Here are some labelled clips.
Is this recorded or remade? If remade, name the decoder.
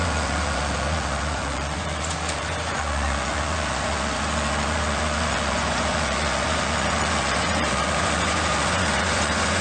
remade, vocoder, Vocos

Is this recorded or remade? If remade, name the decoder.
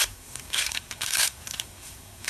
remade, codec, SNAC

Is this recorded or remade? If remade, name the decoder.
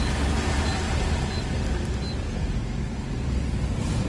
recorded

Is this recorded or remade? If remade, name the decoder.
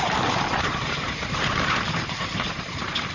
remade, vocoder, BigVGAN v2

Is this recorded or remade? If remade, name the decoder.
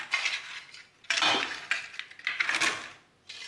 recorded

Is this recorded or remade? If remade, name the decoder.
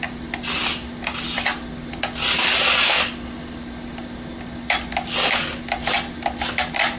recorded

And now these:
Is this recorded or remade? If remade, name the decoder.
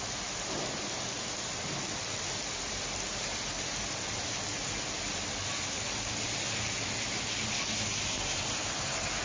recorded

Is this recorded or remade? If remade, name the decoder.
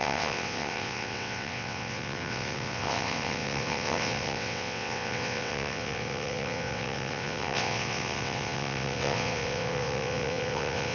remade, vocoder, WaveNeXt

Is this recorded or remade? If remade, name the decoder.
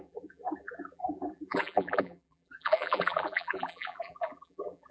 remade, vocoder, BigVGAN v2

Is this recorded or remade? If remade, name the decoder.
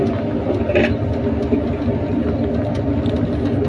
recorded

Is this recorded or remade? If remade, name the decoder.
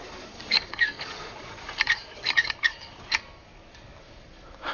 remade, codec, DAC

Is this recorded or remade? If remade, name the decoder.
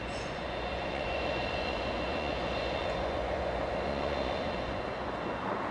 remade, vocoder, Vocos